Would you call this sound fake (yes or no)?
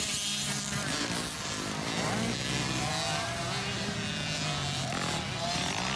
no